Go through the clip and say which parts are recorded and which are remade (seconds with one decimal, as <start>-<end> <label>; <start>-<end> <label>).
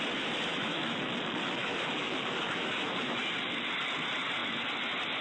0.0-0.5 recorded; 0.5-1.0 remade; 1.0-1.6 recorded; 1.6-3.2 remade; 3.2-5.2 recorded